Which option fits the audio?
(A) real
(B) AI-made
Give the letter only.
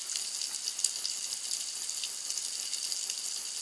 A